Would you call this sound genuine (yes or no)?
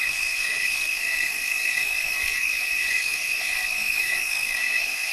no